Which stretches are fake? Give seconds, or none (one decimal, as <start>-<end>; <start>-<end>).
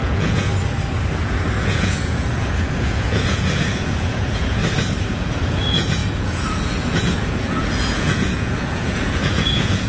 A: 0.0-0.5; 1.6-4.6; 5.1-9.9